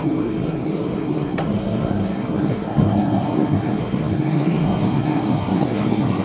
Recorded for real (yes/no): no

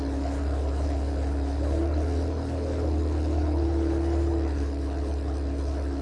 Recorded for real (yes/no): no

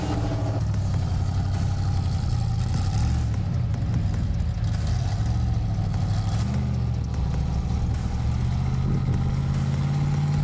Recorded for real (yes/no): yes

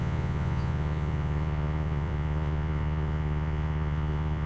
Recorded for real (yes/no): no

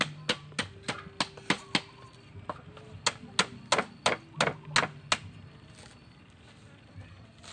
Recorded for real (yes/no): yes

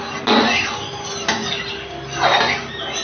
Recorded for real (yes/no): yes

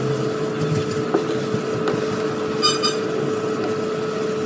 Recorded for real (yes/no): yes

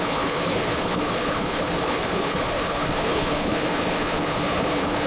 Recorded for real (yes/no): no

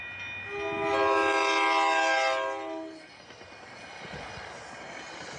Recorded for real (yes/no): yes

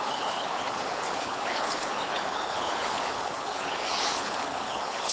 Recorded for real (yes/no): no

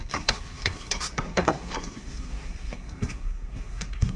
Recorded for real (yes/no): no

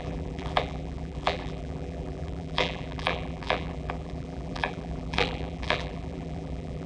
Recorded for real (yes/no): no